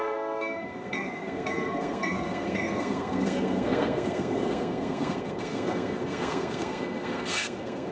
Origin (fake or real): fake